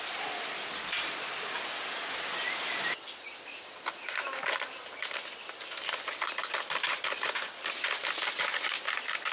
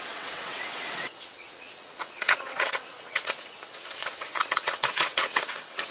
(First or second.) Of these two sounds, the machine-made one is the second